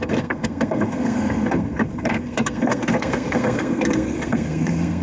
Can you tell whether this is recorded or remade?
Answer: remade